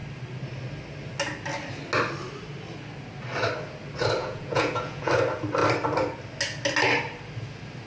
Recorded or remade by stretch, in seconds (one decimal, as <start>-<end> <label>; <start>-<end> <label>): 0.0-4.2 recorded; 4.2-5.1 remade; 5.1-7.9 recorded